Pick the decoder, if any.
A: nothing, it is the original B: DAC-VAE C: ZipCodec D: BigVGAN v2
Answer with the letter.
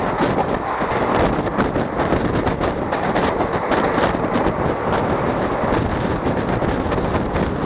A